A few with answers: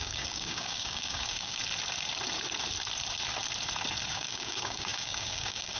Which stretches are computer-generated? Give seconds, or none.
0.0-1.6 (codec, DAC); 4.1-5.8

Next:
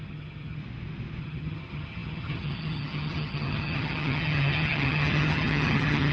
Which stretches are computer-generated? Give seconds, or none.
0.0-0.6 (vocoder, HiFi-GAN); 1.2-6.1

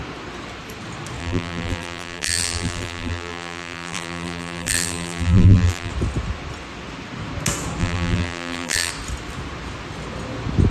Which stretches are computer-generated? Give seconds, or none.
1.2-5.9 (vocoder, BigVGAN v2); 7.8-8.9

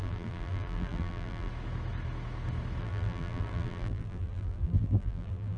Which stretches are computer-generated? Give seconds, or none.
0.0-1.5 (vocoder, BigVGAN v2); 2.8-5.6

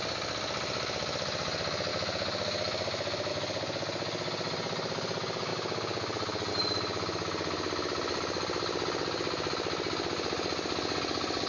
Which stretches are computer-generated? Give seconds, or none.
1.9-3.3 (autoencoder, DAC-VAE)

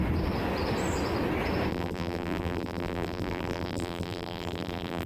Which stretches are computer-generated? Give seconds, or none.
1.7-5.1 (vocoder, BigVGAN v2)

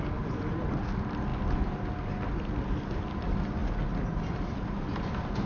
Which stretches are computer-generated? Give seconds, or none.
none

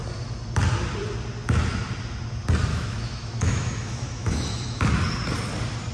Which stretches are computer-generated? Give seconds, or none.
2.7-4.8 (autoencoder, DAC-VAE)